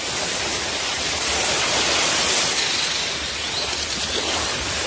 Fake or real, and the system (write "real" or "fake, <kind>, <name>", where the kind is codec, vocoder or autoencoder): real